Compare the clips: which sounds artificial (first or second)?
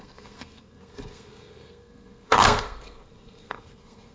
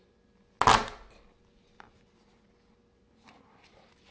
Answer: first